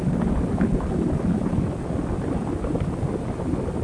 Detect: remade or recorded recorded